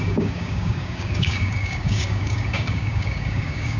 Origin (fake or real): fake